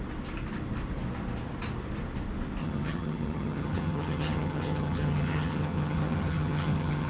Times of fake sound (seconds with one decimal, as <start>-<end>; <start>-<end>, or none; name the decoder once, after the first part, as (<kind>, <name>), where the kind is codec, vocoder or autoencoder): 2.6-7.1 (vocoder, HiFi-GAN)